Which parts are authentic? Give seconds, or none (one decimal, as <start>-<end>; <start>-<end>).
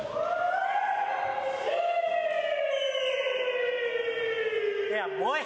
0.0-5.5